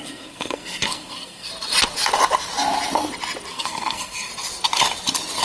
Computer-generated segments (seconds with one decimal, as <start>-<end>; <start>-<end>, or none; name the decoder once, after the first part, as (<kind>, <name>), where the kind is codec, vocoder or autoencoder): 0.0-1.5 (codec, SNAC); 3.5-4.3